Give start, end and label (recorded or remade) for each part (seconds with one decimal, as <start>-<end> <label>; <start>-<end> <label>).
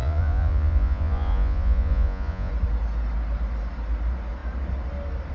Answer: 0.0-2.5 remade; 2.5-5.3 recorded